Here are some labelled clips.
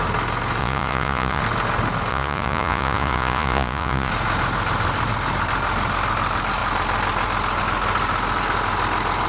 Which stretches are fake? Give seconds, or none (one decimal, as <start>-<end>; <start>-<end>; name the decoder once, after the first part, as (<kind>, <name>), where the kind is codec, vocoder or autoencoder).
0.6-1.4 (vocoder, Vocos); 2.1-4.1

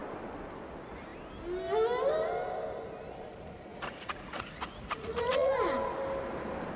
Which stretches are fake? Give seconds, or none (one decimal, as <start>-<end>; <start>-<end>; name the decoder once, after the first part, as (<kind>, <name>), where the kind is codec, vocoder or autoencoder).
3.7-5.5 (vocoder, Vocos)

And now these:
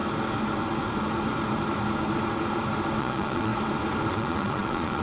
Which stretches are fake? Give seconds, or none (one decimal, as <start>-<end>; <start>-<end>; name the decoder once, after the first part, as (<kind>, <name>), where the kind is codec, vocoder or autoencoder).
3.0-3.5 (vocoder, Vocos); 4.1-5.0

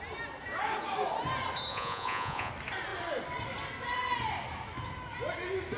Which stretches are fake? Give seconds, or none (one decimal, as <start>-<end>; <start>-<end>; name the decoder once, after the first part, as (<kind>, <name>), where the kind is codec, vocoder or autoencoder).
1.7-2.5 (vocoder, Vocos)

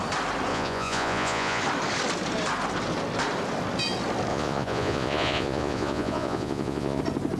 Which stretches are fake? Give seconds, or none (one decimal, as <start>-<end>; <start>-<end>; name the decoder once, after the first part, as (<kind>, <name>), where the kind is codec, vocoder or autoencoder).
0.5-1.6 (vocoder, Vocos); 4.3-7.0